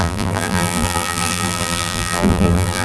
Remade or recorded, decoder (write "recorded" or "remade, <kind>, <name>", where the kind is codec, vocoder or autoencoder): remade, vocoder, BigVGAN v2